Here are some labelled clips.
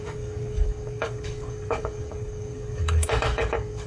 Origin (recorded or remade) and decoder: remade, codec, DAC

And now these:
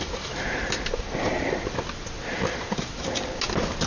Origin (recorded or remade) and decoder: recorded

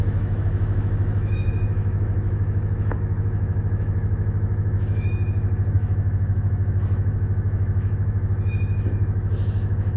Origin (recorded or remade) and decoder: remade, autoencoder, DAC-VAE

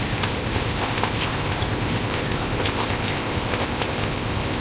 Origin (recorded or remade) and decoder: remade, codec, ZipCodec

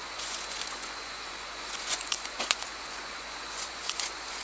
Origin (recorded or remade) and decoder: remade, vocoder, Vocos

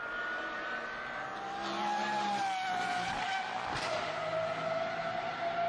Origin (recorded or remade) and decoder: recorded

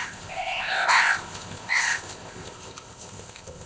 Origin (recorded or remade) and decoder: remade, codec, ZipCodec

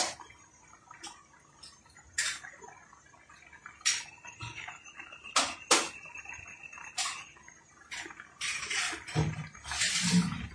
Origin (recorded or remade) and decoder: recorded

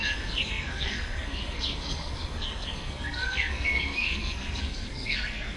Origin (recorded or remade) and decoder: remade, codec, SNAC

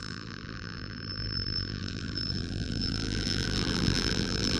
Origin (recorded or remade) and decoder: remade, vocoder, BigVGAN v2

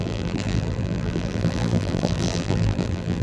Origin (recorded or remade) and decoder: remade, vocoder, BigVGAN v2